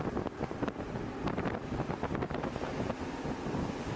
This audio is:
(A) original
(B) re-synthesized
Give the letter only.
A